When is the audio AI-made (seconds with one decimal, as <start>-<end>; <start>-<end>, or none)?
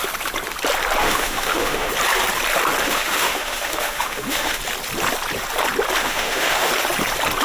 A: 1.0-1.9; 2.8-4.6; 6.0-6.7